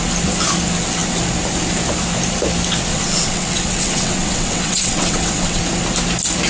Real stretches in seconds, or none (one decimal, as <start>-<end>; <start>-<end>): 0.0-2.9; 5.6-6.5